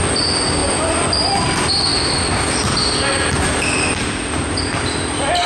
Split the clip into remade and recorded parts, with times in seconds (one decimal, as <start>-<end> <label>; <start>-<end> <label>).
0.0-5.5 recorded